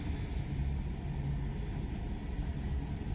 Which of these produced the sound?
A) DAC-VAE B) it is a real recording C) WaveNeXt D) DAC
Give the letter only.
B